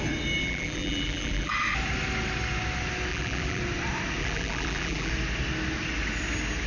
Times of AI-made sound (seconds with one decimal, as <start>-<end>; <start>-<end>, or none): 0.4-1.5; 3.1-3.6; 4.2-5.1